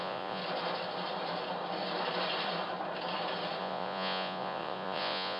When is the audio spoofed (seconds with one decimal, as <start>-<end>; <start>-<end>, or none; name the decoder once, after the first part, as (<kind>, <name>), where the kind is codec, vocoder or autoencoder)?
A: 0.0-0.4 (vocoder, Vocos); 3.6-5.4